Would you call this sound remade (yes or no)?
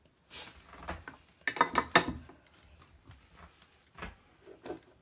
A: no